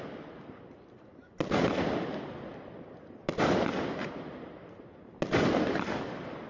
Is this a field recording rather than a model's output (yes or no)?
yes